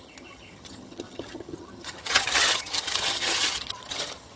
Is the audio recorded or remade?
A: remade